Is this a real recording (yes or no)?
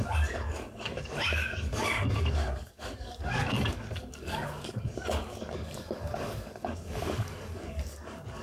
no